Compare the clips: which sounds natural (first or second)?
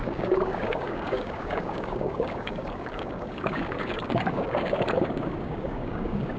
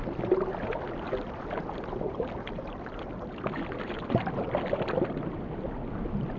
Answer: second